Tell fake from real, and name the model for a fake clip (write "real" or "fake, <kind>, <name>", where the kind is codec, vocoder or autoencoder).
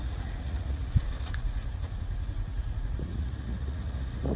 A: fake, vocoder, Vocos